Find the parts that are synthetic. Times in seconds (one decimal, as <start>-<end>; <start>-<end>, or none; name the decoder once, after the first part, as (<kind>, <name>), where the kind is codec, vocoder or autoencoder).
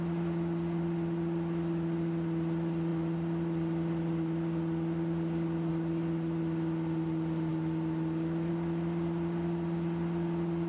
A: none